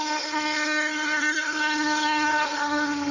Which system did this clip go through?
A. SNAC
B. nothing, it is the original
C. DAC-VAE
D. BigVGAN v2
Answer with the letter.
A